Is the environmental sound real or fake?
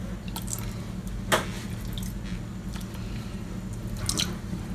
real